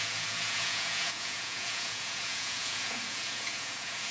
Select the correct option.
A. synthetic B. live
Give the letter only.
A